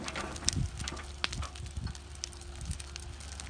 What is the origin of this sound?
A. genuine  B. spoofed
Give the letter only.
A